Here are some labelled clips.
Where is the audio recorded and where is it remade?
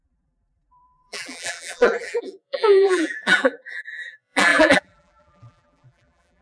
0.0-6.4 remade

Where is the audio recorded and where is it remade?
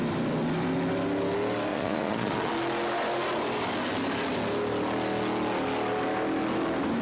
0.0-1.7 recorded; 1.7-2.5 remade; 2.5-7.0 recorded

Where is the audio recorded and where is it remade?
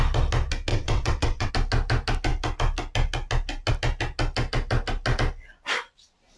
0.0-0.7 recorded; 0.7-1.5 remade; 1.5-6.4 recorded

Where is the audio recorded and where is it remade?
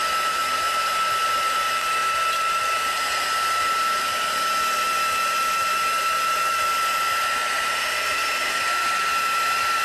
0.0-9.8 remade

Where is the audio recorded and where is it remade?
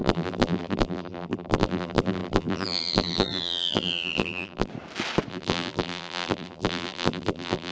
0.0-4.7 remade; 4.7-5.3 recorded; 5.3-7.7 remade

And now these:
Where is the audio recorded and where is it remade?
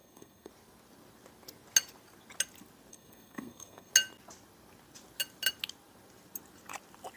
0.0-0.5 remade; 0.5-2.9 recorded; 2.9-3.9 remade; 3.9-7.2 recorded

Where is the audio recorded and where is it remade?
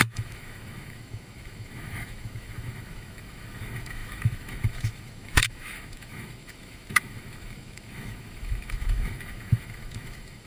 0.0-10.5 remade